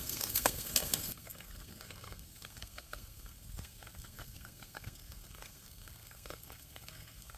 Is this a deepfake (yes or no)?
yes